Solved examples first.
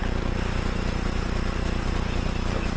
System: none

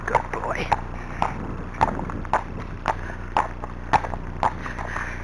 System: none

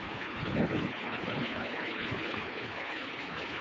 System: codec, HILCodec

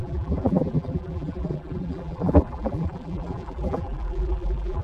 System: vocoder, BigVGAN v2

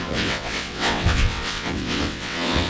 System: vocoder, WaveNeXt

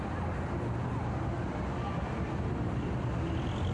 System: none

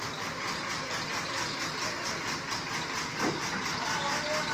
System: none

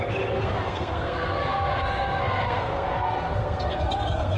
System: codec, SNAC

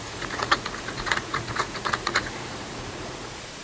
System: vocoder, Vocos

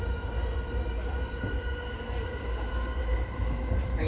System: none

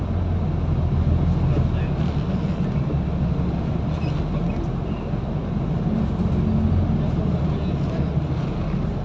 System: none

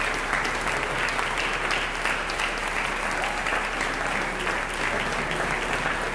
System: none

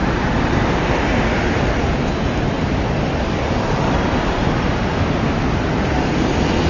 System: vocoder, BigVGAN v2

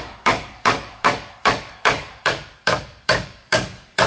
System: codec, DAC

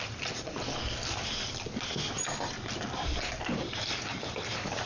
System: none